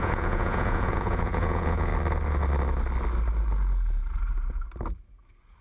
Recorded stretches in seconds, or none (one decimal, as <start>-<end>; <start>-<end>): 1.9-5.6